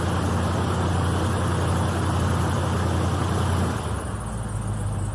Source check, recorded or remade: recorded